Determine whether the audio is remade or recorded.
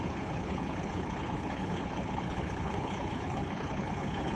remade